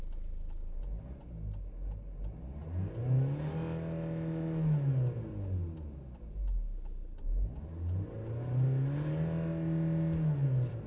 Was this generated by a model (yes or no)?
no